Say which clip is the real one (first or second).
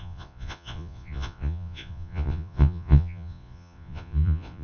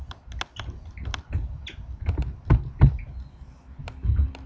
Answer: second